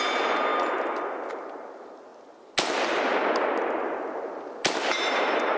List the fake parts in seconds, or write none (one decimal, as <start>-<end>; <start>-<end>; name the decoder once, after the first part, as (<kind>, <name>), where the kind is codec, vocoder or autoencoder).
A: none